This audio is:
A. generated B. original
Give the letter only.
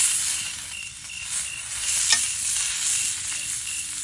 B